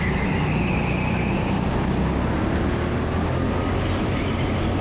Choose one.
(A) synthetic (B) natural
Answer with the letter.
B